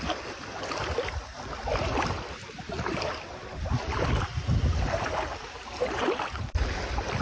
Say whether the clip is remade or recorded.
recorded